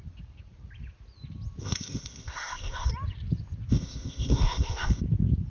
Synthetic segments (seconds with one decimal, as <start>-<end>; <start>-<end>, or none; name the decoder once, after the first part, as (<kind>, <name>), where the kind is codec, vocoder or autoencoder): 1.6-2.9 (codec, ZipCodec); 3.7-5.0